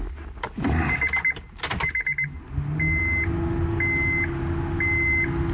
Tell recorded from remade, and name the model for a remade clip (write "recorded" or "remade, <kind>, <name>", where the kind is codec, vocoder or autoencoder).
recorded